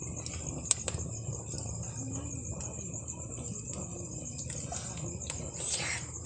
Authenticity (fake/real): real